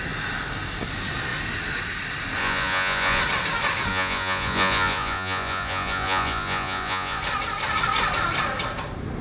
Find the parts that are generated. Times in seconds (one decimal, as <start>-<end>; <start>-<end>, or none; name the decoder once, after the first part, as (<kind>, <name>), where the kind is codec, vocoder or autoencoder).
2.4-3.2 (vocoder, Vocos); 3.9-7.2